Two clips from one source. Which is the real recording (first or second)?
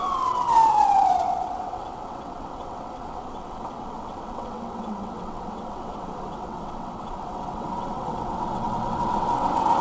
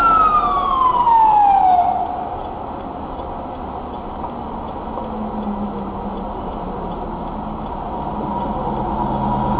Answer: second